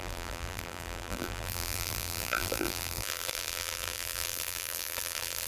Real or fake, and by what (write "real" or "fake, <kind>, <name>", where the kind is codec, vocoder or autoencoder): fake, vocoder, BigVGAN v2